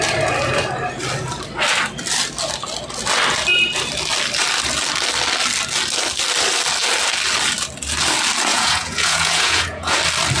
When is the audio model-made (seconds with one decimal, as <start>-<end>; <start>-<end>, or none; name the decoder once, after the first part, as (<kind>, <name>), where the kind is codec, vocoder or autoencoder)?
8.5-10.0 (vocoder, Vocos)